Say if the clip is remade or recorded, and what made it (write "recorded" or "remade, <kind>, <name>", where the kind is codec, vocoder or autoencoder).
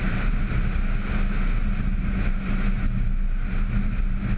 recorded